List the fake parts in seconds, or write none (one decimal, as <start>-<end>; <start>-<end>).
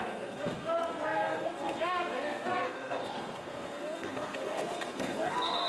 0.0-5.7